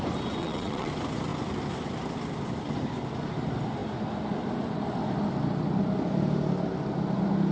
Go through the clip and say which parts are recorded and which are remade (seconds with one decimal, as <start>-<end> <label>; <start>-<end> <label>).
0.0-0.4 recorded; 0.4-0.9 remade; 0.9-7.5 recorded